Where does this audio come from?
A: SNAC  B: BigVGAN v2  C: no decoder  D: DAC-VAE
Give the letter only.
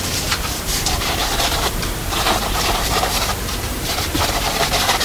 B